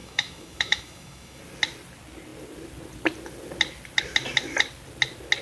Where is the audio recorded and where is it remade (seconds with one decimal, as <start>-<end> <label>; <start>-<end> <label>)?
0.0-1.4 remade; 1.4-5.4 recorded